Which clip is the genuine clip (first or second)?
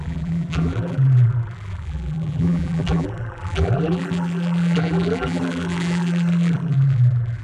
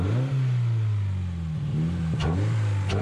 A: second